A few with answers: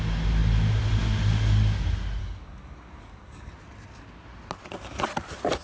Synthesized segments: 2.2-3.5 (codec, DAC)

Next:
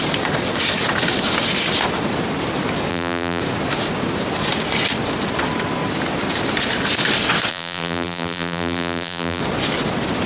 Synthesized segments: 2.9-3.4 (vocoder, BigVGAN v2); 7.5-9.4

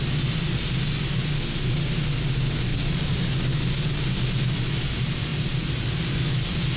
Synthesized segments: 2.7-3.3 (vocoder, BigVGAN v2); 5.3-6.8

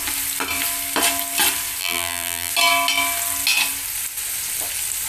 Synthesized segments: 1.8-2.5 (vocoder, BigVGAN v2)

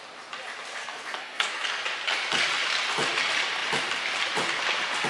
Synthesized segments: 0.8-1.6 (codec, SNAC)